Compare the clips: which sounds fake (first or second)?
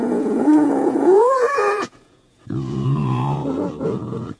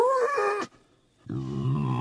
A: first